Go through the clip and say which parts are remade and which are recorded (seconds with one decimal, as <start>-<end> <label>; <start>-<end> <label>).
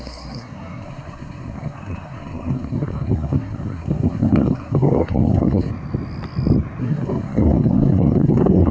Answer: 0.0-5.7 remade; 5.7-6.8 recorded; 6.8-8.7 remade